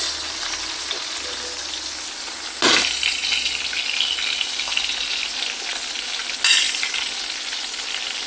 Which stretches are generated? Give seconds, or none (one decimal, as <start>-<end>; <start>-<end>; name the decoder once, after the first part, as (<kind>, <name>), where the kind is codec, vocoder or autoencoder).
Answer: none